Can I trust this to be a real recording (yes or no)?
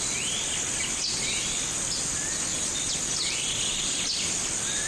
yes